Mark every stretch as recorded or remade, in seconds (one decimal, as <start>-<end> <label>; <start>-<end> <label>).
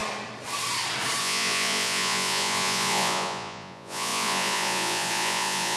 0.0-1.2 recorded; 1.2-5.8 remade